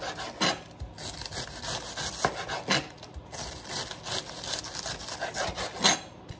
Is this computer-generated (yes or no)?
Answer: no